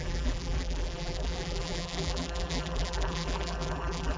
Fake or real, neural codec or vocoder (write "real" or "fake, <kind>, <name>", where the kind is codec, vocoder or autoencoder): fake, vocoder, BigVGAN v2